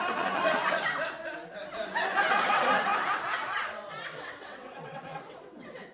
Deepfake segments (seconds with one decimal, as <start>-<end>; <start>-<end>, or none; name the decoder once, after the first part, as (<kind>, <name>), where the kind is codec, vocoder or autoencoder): 0.0-0.9 (vocoder, WaveNeXt); 2.3-2.9; 3.7-5.9